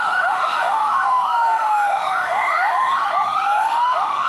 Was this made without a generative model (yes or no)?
no